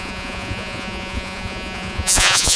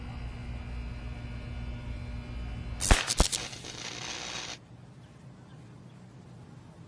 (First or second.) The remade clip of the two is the first